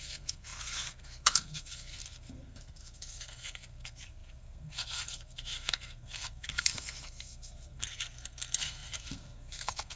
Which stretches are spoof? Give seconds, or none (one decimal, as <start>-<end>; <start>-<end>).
0.0-10.0